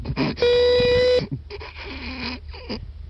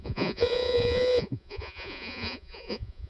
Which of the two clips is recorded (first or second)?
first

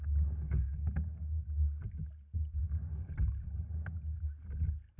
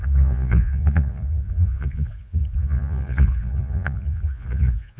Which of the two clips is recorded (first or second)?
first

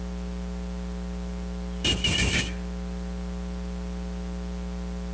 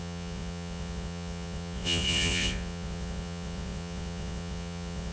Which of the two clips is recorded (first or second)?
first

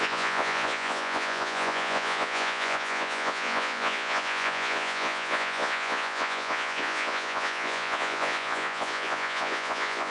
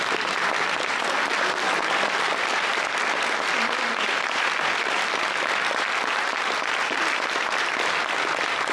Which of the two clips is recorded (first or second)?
second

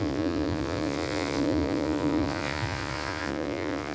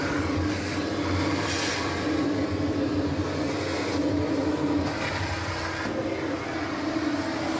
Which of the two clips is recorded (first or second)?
second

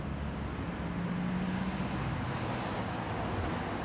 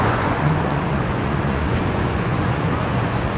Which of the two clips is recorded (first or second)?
first